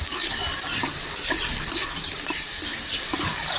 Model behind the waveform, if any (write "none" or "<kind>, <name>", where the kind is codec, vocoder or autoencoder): none